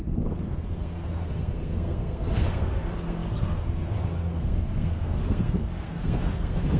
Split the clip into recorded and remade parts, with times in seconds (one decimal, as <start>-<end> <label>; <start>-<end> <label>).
0.0-6.8 remade